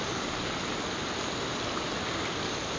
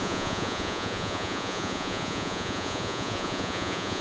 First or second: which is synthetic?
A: second